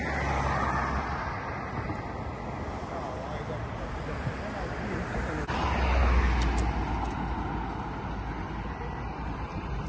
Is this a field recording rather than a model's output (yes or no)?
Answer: yes